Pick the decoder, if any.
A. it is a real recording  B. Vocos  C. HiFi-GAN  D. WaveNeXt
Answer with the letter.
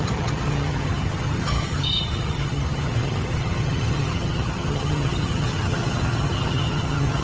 C